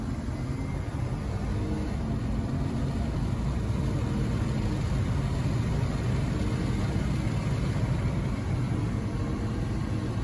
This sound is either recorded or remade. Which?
recorded